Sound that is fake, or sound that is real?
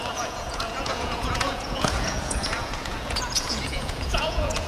fake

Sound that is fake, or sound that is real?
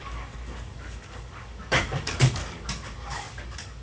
fake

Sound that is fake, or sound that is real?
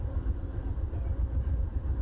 fake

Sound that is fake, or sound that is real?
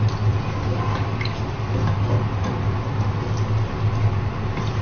real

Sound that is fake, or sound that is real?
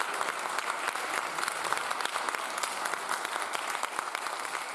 real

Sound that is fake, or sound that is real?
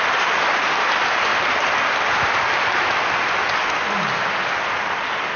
real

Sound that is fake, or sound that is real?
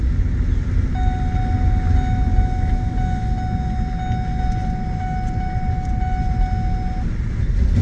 real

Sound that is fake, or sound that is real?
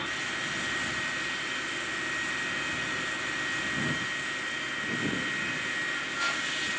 real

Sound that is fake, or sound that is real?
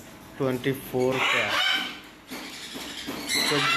real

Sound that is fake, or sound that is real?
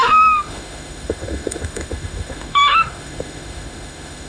fake